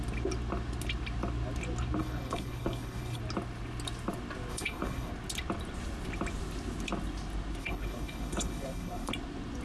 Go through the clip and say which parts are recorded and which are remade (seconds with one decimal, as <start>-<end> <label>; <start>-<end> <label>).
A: 0.0-2.0 recorded; 2.0-3.2 remade; 3.2-4.5 recorded; 4.5-5.1 remade; 5.1-7.6 recorded; 7.6-9.1 remade; 9.1-9.6 recorded